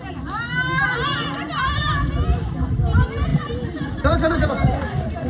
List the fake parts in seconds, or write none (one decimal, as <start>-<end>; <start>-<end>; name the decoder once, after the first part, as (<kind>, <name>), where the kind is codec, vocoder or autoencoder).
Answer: none